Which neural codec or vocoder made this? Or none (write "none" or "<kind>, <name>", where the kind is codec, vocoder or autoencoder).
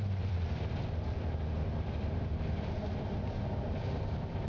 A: vocoder, BigVGAN v2